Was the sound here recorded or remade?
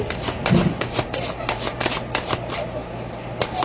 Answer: remade